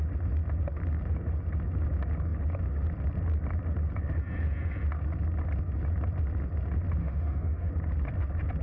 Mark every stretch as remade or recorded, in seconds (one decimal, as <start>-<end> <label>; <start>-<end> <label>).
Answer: 0.0-7.0 recorded; 7.0-7.7 remade; 7.7-8.6 recorded